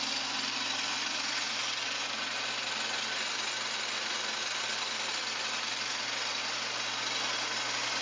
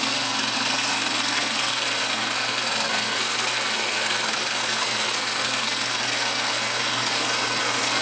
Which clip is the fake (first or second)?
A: second